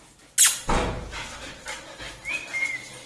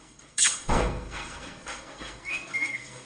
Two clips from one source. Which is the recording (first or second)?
first